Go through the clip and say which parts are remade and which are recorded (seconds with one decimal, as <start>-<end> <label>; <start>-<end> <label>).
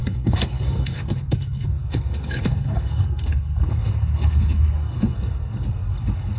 0.0-6.4 remade